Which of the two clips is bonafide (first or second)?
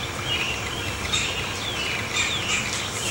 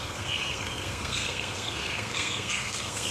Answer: first